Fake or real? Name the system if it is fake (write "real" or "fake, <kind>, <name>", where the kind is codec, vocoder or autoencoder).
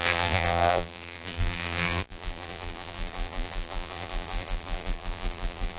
fake, vocoder, BigVGAN v2